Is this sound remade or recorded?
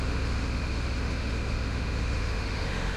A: remade